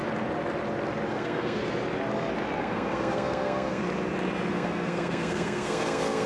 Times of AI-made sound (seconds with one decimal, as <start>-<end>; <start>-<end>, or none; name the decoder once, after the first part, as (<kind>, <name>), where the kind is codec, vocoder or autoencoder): 1.1-1.6 (codec, SNAC); 2.6-3.8; 4.5-6.3